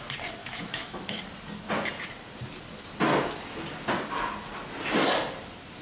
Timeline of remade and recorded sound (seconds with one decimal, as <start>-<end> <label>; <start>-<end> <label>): 0.0-0.4 recorded; 0.4-1.2 remade; 1.2-5.8 recorded